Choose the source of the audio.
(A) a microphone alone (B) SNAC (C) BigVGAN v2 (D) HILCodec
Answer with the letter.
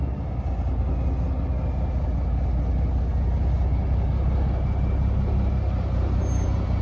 A